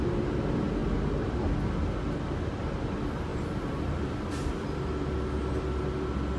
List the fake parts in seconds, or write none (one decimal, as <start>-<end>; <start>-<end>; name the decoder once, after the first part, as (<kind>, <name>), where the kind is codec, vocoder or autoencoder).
0.8-1.9 (vocoder, BigVGAN v2); 3.3-4.7